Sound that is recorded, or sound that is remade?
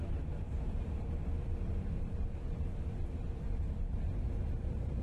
remade